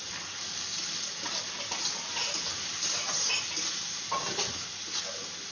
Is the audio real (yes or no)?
yes